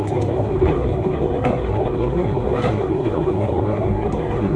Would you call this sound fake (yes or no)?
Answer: yes